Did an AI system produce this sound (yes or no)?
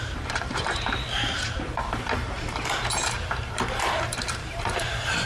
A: yes